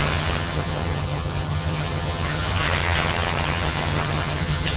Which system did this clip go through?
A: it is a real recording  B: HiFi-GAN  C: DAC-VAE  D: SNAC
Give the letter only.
B